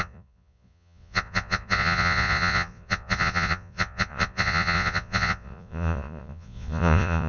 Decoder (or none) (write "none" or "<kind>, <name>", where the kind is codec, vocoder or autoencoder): vocoder, Vocos